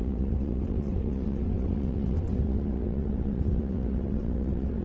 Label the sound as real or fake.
fake